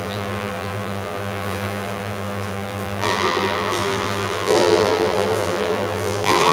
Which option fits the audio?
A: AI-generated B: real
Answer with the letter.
A